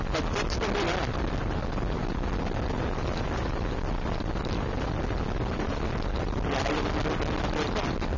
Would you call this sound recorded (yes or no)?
yes